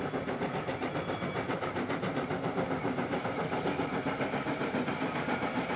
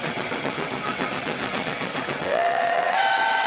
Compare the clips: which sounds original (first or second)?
first